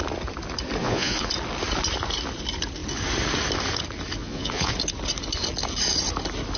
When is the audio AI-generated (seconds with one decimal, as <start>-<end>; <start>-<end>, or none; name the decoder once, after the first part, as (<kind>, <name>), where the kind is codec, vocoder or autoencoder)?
0.8-1.3 (vocoder, Vocos); 4.2-4.7